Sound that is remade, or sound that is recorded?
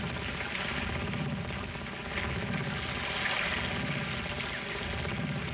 recorded